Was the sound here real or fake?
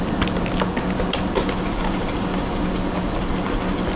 real